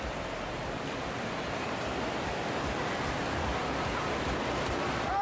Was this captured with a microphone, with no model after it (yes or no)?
yes